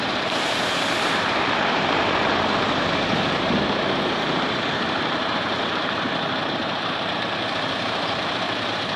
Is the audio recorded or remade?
remade